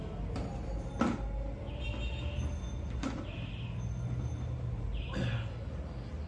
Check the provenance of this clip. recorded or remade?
recorded